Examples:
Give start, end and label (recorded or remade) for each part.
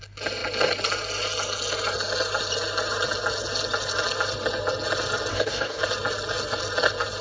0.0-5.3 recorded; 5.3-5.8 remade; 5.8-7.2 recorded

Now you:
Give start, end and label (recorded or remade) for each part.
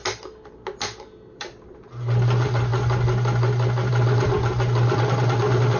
0.0-5.8 recorded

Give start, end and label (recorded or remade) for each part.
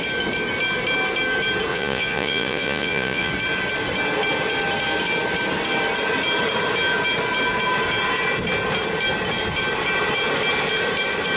0.0-1.7 recorded; 1.7-3.3 remade; 3.3-11.4 recorded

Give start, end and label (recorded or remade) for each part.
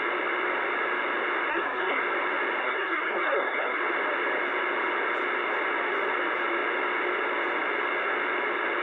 0.0-1.5 recorded; 1.5-2.0 remade; 2.0-2.6 recorded; 2.6-3.8 remade; 3.8-8.8 recorded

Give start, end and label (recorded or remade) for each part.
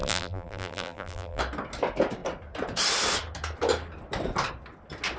0.0-1.4 remade; 1.4-5.2 recorded